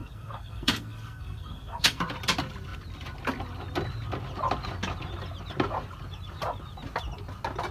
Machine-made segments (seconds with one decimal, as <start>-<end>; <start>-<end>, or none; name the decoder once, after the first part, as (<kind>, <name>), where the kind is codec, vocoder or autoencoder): 0.0-2.0 (codec, SNAC)